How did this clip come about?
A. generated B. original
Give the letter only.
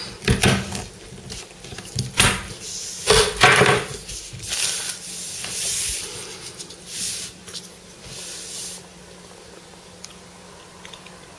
B